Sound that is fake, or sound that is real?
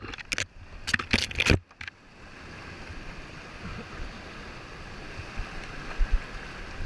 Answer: real